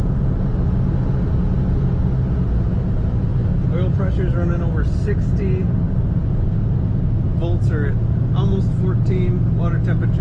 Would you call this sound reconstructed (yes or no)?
no